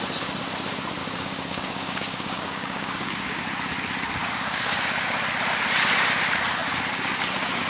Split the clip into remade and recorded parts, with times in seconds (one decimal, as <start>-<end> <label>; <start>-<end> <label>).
0.0-1.0 recorded; 1.0-3.4 remade; 3.4-4.2 recorded; 4.2-5.2 remade; 5.2-7.7 recorded